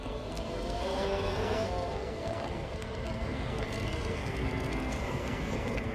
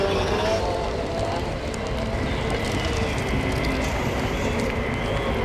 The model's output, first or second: first